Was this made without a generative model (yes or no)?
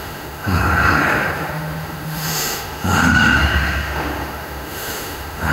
no